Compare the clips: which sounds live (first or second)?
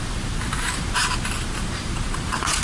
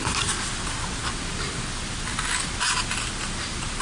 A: second